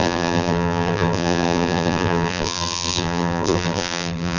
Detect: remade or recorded remade